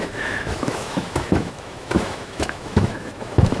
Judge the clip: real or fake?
fake